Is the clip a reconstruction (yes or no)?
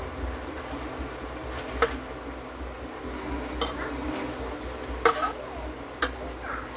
no